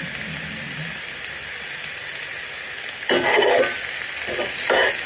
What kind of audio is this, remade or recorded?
recorded